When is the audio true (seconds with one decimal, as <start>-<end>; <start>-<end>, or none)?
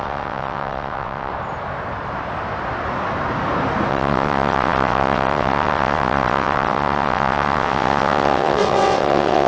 1.3-3.9